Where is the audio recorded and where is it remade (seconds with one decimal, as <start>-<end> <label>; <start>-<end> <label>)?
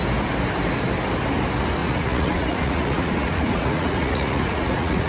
0.0-1.8 recorded; 1.8-5.1 remade